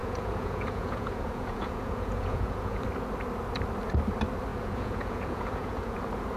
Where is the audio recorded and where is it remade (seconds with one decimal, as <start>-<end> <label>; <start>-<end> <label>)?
0.0-2.8 remade; 2.8-4.5 recorded; 4.5-6.0 remade; 6.0-6.4 recorded